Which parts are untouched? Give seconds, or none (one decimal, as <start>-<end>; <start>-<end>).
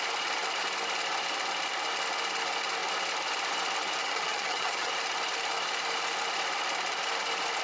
0.0-4.0; 4.9-7.6